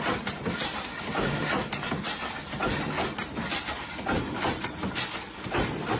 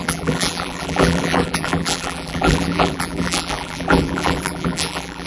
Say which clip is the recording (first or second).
first